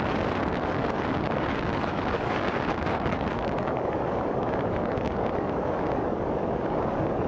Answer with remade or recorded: remade